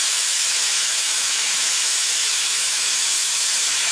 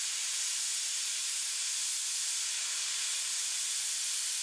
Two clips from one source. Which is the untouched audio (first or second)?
second